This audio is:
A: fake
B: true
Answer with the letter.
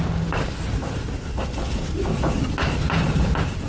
B